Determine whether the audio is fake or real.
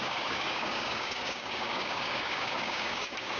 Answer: fake